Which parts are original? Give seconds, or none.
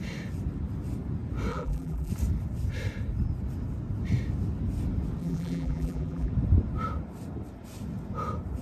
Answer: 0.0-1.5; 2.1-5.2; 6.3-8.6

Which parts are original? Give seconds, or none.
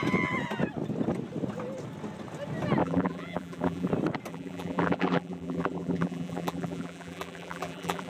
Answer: 0.0-2.8; 3.9-4.3